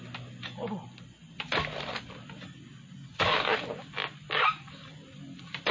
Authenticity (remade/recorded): recorded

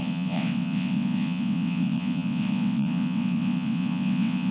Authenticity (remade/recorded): remade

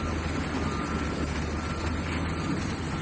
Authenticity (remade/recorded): recorded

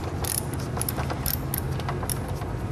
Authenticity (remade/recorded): recorded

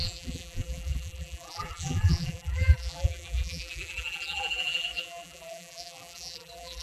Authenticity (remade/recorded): remade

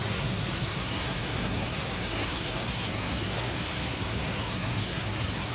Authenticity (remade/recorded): remade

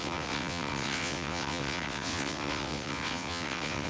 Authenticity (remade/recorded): remade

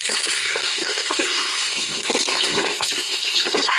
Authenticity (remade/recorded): remade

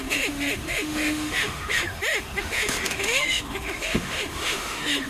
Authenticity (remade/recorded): remade